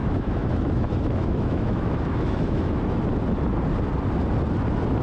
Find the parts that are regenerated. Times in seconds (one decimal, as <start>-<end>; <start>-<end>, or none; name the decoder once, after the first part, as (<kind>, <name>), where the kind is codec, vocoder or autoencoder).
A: 0.0-3.0 (autoencoder, DAC-VAE)